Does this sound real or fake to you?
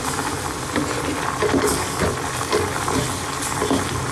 real